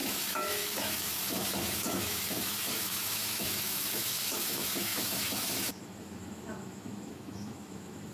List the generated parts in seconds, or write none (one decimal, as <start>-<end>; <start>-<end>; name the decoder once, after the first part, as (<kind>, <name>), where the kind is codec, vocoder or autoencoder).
0.0-8.1 (autoencoder, DAC-VAE)